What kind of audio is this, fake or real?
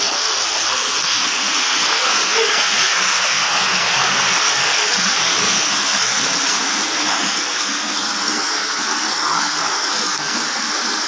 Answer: fake